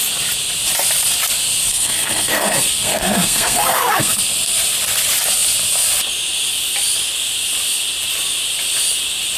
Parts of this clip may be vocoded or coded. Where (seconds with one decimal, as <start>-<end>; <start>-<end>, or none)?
1.7-4.2